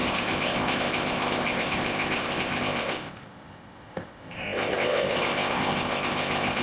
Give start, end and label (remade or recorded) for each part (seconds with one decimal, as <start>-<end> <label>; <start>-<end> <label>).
0.0-6.6 remade